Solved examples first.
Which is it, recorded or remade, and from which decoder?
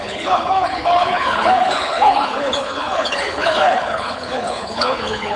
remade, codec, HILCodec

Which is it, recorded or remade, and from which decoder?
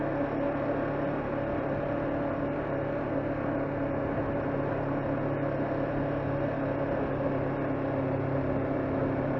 recorded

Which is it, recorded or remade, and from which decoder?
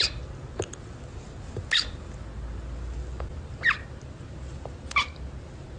recorded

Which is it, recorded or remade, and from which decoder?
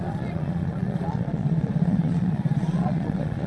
remade, vocoder, Vocos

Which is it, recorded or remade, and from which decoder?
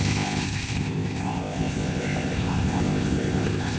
remade, codec, ZipCodec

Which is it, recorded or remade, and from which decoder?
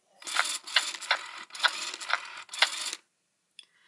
recorded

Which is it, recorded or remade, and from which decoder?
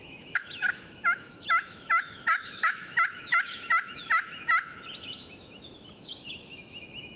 remade, autoencoder, DAC-VAE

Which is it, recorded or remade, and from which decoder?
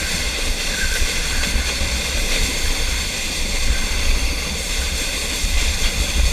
remade, vocoder, BigVGAN v2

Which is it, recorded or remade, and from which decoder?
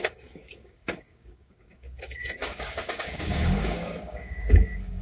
remade, codec, DAC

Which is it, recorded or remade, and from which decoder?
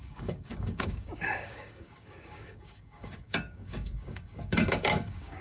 remade, codec, DAC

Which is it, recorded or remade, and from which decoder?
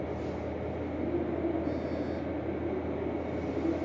recorded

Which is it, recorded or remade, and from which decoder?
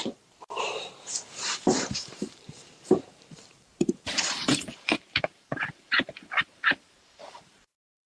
remade, vocoder, BigVGAN v2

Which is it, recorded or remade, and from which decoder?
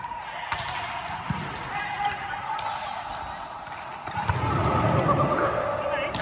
recorded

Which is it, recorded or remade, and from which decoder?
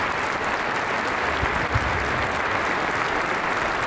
recorded